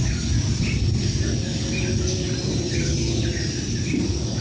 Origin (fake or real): real